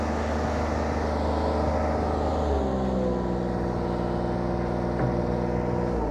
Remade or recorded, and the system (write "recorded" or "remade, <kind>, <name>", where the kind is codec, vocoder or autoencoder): recorded